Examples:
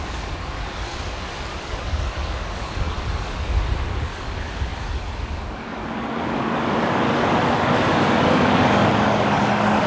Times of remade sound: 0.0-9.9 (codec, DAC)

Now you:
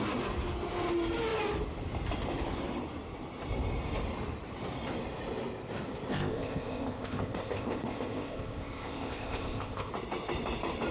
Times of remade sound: 6.1-9.9 (codec, ZipCodec)